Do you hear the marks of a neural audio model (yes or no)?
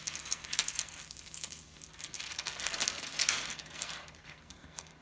yes